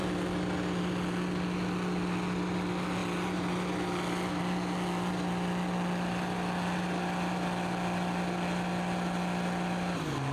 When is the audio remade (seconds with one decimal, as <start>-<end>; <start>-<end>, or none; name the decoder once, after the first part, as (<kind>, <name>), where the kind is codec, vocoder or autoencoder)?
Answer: none